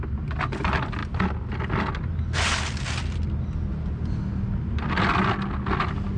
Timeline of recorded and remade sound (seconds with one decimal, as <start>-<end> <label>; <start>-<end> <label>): 0.0-6.2 recorded